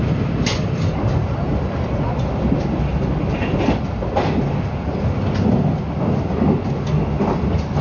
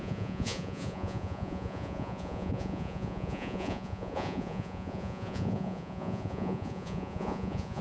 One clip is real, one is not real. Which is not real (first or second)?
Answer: second